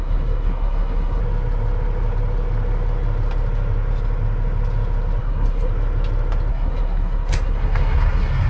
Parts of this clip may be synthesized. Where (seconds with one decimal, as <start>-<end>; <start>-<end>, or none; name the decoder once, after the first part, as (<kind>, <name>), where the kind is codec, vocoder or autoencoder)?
0.0-1.2 (codec, SNAC); 5.2-5.7; 6.5-8.5